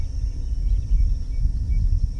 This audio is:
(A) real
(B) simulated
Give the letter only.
A